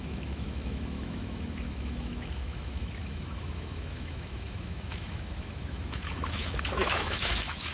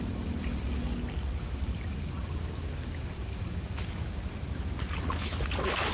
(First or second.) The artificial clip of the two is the first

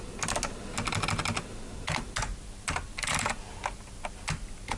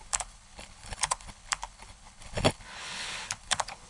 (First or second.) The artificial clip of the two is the second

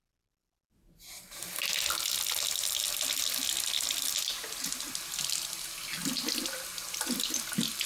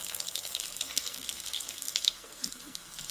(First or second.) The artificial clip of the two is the second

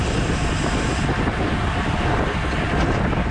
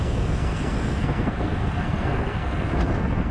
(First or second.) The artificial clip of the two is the second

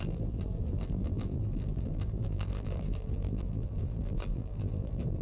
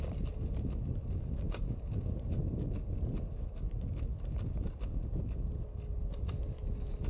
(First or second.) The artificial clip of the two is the first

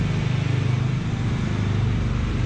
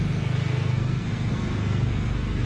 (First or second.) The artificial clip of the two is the second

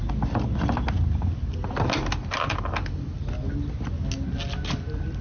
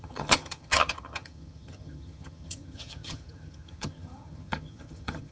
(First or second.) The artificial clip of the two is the second